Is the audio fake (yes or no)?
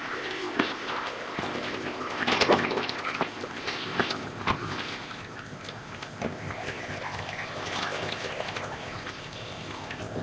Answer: yes